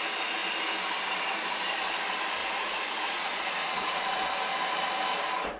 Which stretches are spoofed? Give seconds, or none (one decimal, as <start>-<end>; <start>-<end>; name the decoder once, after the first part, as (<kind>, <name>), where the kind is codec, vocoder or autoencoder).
2.4-4.0 (vocoder, Vocos)